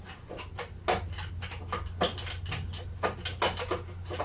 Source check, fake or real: real